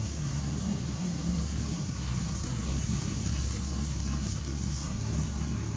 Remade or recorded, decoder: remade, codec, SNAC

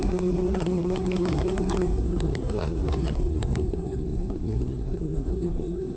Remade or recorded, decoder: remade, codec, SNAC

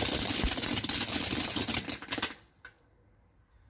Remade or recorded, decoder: recorded